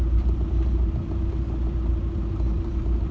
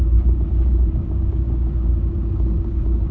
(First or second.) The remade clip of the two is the second